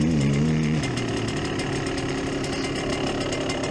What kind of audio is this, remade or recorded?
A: recorded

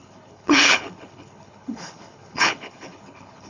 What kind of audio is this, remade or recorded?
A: remade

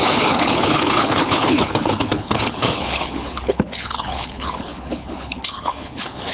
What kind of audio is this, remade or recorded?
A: remade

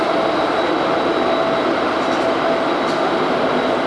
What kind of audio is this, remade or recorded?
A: recorded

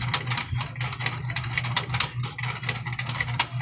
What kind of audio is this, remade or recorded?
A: recorded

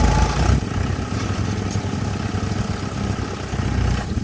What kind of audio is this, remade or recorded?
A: recorded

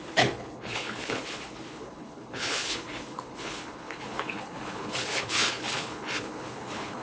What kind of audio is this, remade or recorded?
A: remade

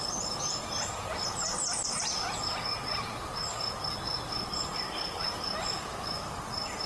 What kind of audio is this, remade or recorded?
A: recorded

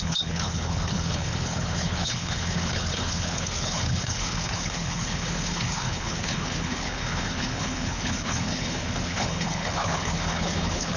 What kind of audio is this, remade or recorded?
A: remade